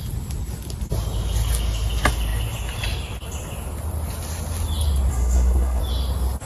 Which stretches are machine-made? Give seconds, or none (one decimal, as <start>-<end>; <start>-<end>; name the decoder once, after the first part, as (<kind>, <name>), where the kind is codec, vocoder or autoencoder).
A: 5.1-5.8 (codec, SNAC)